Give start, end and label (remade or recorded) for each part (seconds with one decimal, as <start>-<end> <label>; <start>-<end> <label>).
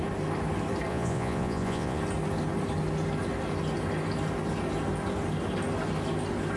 0.0-0.9 recorded; 0.9-2.0 remade; 2.0-6.6 recorded